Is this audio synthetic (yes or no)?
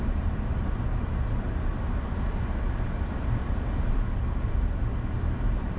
no